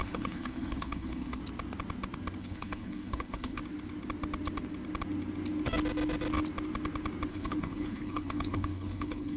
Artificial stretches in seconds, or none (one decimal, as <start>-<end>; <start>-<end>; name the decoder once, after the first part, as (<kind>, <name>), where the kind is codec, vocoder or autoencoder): 0.0-1.4 (codec, HILCodec); 2.4-3.6; 7.3-9.4